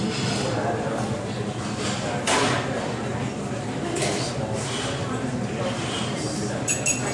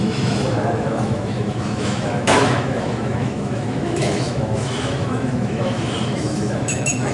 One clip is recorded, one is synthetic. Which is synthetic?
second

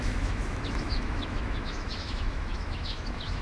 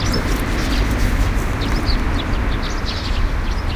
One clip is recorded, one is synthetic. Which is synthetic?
first